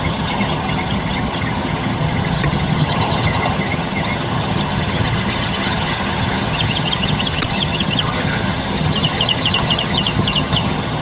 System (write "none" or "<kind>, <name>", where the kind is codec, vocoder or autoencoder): vocoder, HiFi-GAN